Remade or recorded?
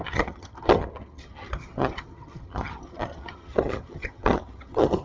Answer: remade